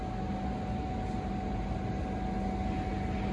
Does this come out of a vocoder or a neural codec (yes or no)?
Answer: no